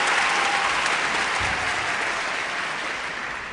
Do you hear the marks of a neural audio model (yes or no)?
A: no